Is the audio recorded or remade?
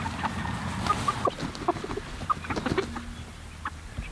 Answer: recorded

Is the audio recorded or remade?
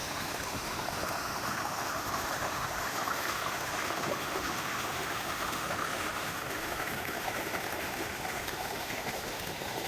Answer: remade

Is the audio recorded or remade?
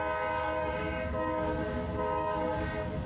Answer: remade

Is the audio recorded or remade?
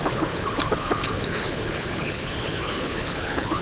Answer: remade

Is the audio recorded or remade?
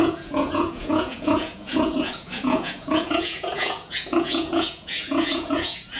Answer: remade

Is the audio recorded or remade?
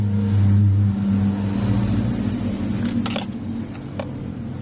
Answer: recorded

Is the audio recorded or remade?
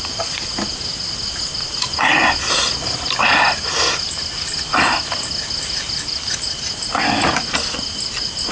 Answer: recorded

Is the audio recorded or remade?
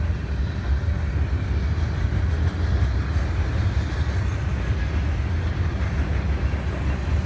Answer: recorded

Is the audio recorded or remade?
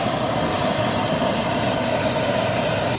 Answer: remade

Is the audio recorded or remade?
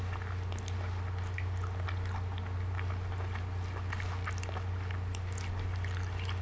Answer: recorded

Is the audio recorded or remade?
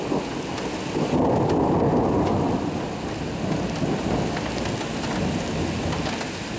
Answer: recorded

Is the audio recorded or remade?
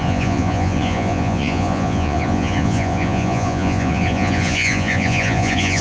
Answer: remade